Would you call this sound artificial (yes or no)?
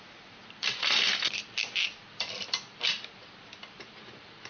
yes